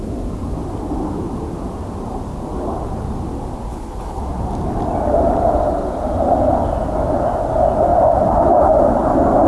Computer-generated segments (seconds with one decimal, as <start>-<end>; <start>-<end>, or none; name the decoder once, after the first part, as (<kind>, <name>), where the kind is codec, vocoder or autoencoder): 3.7-4.2 (codec, HILCodec)

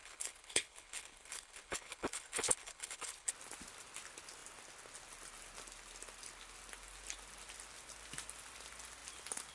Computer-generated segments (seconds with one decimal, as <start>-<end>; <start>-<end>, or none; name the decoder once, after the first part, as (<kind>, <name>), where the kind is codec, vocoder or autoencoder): 0.0-3.3 (codec, HILCodec)